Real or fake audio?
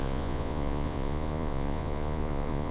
fake